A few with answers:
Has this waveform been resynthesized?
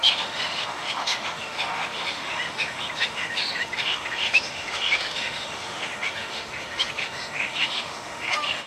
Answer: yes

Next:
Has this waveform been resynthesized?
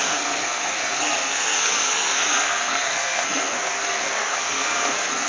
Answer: yes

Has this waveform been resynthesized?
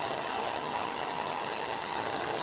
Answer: yes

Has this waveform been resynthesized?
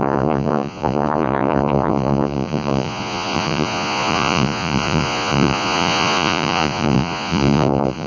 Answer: yes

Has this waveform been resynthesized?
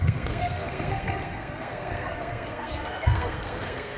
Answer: yes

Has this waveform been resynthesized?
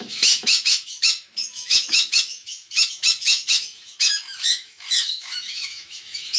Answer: yes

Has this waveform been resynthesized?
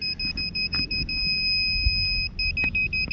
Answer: no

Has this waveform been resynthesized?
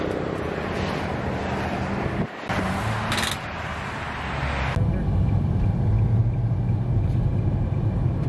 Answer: no